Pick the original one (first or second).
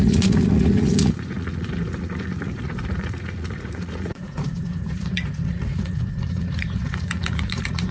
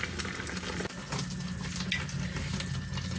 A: second